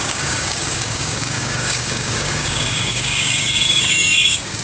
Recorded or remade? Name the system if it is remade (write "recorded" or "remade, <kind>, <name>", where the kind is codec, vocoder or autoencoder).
remade, codec, DAC